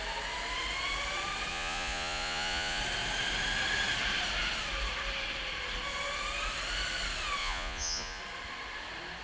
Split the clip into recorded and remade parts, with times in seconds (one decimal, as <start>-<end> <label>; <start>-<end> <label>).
0.0-1.5 recorded; 1.5-2.8 remade; 2.8-7.4 recorded; 7.4-8.2 remade; 8.2-9.2 recorded

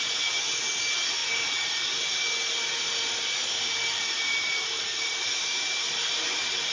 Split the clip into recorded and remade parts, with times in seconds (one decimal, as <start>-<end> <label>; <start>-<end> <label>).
0.0-6.7 recorded

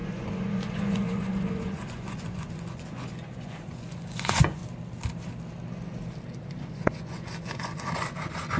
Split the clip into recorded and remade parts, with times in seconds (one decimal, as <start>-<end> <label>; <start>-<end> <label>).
0.0-4.6 remade; 4.6-6.4 recorded; 6.4-8.6 remade